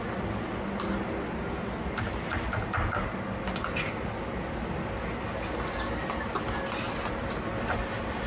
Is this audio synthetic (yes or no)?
no